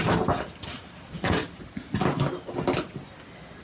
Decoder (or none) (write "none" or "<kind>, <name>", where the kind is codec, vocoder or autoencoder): none